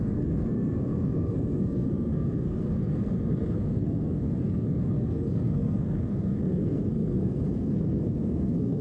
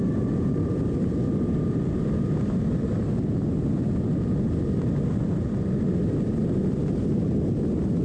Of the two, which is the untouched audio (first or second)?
second